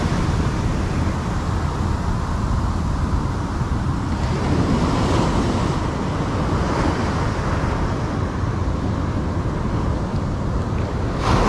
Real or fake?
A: real